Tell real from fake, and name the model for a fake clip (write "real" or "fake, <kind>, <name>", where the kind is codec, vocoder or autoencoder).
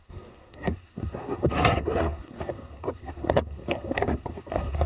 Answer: fake, codec, SNAC